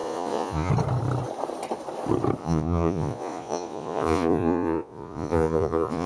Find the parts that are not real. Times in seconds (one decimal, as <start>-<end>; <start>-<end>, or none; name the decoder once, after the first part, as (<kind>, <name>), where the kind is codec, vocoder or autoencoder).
0.0-0.7 (vocoder, Vocos); 2.4-6.1